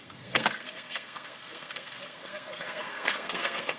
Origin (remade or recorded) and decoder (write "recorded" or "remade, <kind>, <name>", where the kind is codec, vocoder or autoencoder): remade, codec, SNAC